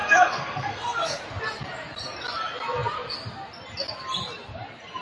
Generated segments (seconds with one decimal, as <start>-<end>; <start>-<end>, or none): 0.0-1.2